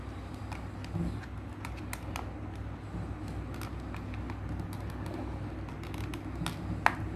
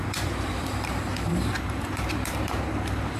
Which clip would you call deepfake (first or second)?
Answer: second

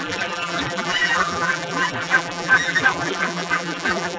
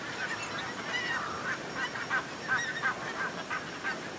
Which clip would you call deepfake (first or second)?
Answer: first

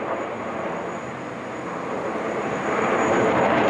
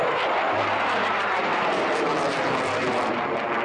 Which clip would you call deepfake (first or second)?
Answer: first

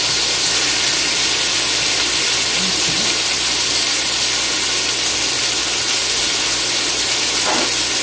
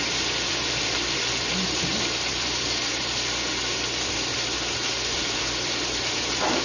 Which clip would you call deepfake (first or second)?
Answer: second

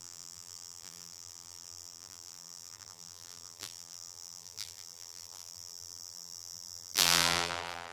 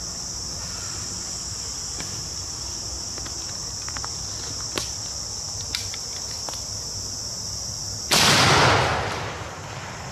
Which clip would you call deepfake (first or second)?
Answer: first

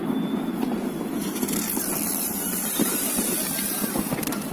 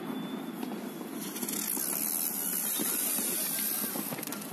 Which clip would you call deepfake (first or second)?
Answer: first